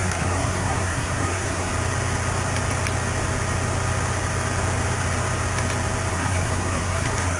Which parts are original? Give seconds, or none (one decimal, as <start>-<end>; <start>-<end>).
1.7-6.1